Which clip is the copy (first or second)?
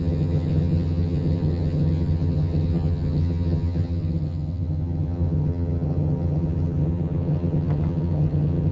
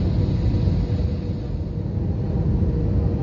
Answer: first